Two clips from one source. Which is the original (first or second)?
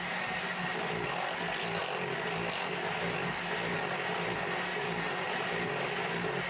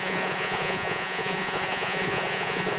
first